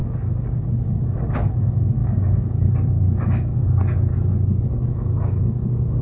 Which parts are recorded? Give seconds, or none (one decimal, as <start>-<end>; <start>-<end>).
4.1-4.7